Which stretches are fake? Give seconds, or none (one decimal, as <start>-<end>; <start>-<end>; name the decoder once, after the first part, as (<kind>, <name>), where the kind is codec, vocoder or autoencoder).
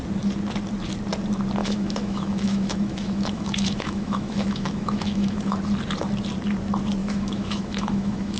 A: 1.6-5.6 (autoencoder, DAC-VAE); 7.0-8.4